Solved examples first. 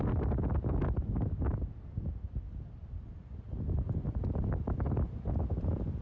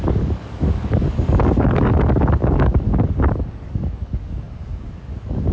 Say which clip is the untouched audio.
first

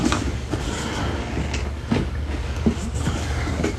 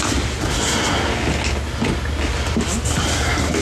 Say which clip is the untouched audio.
second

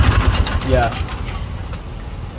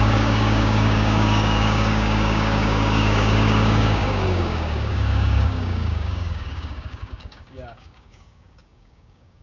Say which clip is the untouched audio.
first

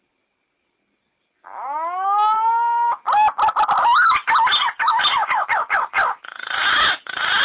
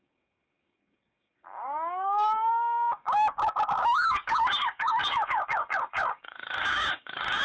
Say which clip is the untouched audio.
first